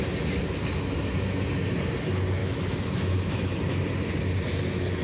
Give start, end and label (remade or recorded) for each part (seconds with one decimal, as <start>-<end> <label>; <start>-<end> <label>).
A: 0.0-2.4 recorded; 2.4-3.3 remade; 3.3-5.0 recorded